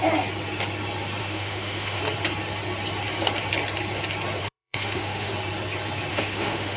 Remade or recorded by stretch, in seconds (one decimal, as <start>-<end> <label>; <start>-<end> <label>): 0.0-1.2 recorded; 1.2-2.0 remade; 2.0-4.4 recorded; 4.4-5.3 remade; 5.3-6.1 recorded; 6.1-6.8 remade